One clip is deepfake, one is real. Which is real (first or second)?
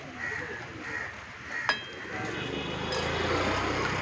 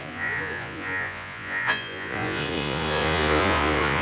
first